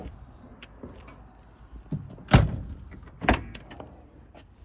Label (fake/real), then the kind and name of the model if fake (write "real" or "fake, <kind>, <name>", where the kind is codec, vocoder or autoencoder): real